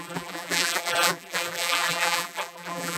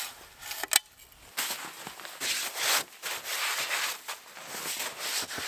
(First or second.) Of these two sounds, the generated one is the first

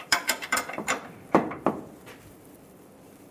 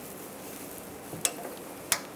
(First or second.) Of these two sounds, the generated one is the first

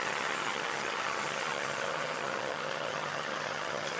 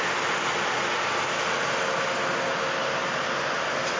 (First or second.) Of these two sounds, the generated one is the first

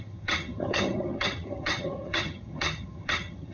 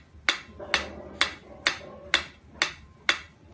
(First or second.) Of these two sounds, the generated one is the first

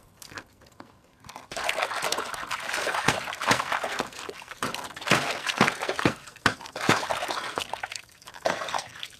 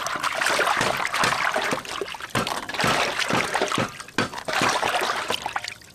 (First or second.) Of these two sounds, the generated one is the first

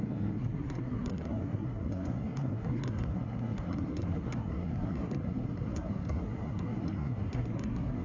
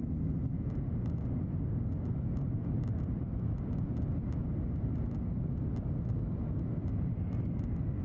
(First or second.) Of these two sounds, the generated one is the first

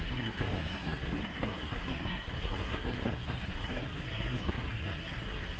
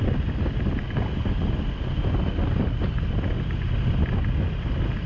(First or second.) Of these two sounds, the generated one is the first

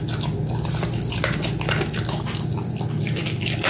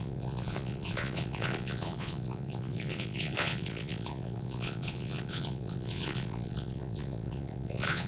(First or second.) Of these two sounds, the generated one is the second